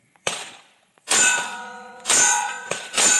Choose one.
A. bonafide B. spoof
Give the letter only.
B